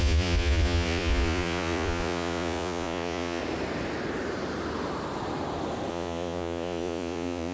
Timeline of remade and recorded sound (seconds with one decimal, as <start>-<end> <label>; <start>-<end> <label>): 0.0-3.4 remade; 3.4-5.9 recorded; 5.9-7.5 remade